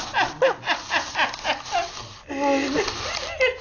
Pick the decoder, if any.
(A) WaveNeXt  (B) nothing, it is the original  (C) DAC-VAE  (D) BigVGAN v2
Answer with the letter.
B